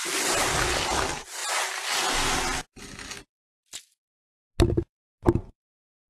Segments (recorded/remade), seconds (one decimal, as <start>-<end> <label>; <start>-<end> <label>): 0.0-6.1 recorded